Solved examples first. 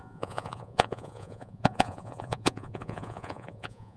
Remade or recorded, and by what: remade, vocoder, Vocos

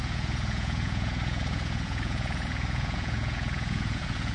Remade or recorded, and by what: remade, vocoder, Vocos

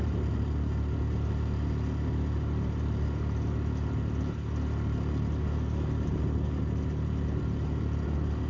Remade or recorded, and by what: recorded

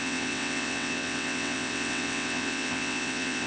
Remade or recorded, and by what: remade, vocoder, WaveNeXt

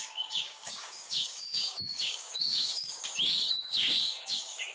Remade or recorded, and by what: remade, codec, DAC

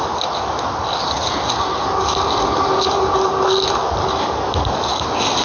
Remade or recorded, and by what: recorded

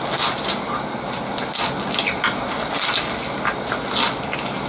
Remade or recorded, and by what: recorded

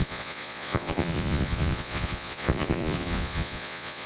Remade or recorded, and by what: remade, vocoder, Vocos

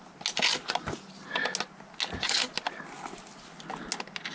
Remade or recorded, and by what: recorded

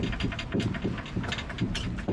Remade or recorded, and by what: recorded